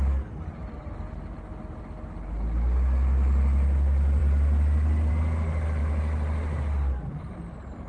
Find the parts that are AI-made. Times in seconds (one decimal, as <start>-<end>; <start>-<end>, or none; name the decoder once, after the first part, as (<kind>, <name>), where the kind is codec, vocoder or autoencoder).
none